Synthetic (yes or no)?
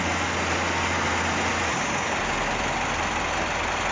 no